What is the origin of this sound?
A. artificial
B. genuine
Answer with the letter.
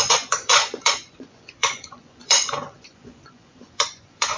A